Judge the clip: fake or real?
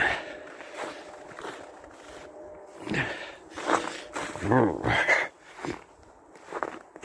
real